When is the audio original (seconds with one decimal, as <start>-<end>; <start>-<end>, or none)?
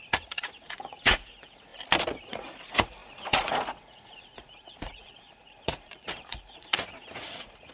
1.7-2.2